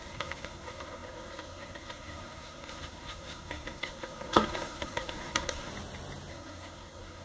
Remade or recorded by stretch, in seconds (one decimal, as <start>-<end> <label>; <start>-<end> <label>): 0.0-5.7 remade; 5.7-6.3 recorded; 6.3-7.2 remade